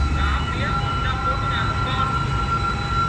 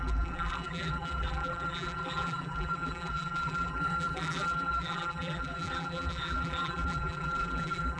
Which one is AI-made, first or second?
second